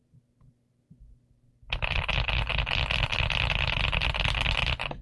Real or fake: real